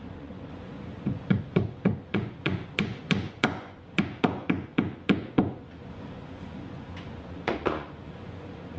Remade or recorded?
remade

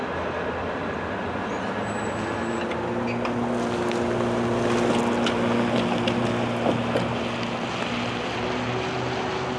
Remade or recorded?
recorded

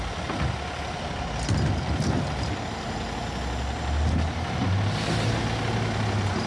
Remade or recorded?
recorded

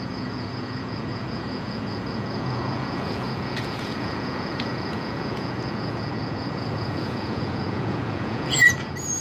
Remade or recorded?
remade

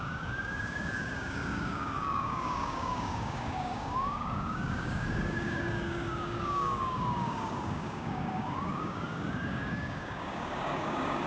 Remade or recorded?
remade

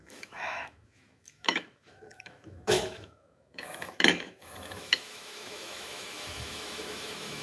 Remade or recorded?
remade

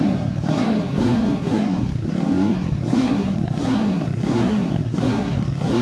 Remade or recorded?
remade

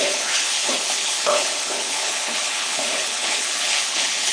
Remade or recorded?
remade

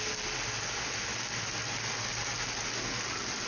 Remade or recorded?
recorded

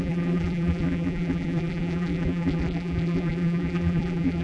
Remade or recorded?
remade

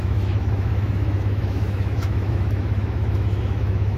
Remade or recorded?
remade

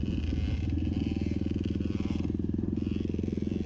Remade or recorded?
recorded